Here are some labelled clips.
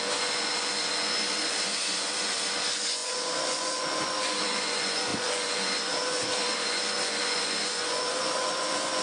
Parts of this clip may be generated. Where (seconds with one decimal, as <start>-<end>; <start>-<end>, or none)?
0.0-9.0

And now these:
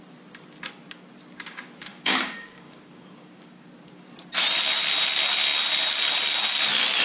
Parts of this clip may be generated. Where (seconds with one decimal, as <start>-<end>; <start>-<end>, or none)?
1.9-3.6

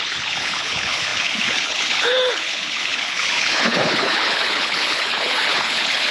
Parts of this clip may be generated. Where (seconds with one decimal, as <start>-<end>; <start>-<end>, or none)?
0.0-6.1

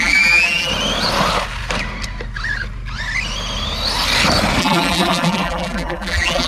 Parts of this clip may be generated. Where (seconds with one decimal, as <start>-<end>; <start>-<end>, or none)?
0.0-0.7; 4.6-6.5